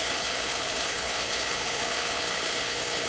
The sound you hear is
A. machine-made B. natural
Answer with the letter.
A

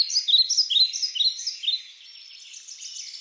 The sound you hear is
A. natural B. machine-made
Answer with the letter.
A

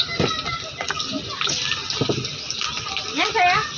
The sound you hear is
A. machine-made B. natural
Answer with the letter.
B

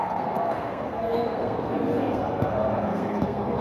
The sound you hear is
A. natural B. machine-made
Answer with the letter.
B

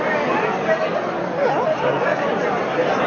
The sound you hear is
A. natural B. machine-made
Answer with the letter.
A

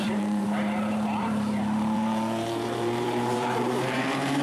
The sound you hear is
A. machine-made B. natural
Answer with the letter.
A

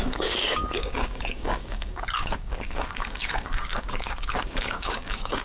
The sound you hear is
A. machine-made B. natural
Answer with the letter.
A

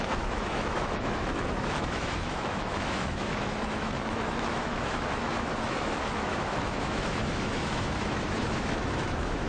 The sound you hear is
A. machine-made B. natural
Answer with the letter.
A